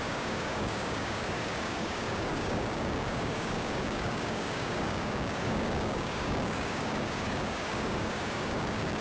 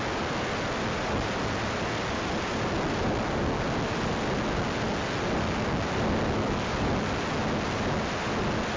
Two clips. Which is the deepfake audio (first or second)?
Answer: first